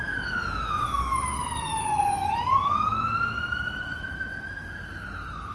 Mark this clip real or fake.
fake